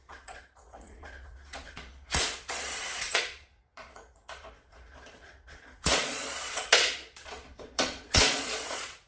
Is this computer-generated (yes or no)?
yes